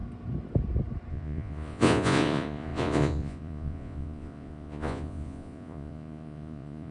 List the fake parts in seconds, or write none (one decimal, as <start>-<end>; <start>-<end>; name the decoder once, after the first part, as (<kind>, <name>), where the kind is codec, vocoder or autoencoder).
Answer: 1.1-6.9 (vocoder, Vocos)